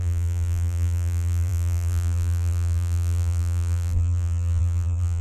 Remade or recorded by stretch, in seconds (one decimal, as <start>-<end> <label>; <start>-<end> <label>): 0.0-5.2 remade